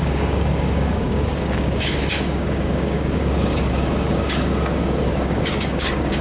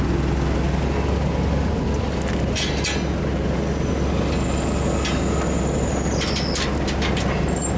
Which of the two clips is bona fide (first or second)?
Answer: second